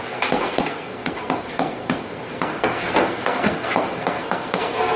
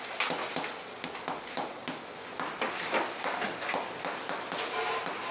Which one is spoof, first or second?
first